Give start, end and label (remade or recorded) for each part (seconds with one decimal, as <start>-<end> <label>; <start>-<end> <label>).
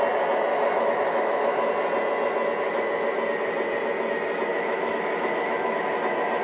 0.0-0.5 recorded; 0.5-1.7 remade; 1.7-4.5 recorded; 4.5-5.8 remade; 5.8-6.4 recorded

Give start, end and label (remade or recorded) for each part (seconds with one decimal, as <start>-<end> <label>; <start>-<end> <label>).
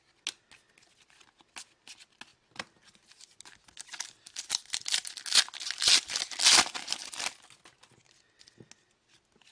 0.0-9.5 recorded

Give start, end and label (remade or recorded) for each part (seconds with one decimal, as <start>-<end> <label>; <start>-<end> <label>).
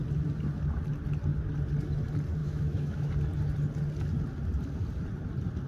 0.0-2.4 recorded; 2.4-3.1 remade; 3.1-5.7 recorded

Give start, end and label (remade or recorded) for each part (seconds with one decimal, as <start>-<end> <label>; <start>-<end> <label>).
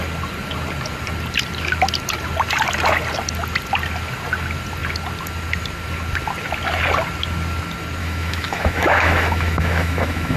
0.0-8.0 recorded; 8.0-10.4 remade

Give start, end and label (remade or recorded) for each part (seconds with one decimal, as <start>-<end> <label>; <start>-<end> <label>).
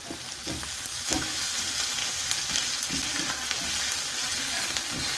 0.0-0.9 recorded; 0.9-1.5 remade; 1.5-5.2 recorded